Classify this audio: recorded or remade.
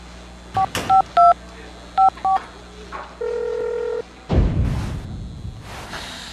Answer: recorded